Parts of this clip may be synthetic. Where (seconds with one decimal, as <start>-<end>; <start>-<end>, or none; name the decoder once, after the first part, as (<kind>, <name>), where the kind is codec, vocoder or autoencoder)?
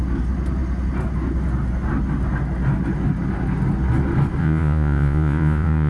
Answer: 4.4-5.9 (vocoder, Vocos)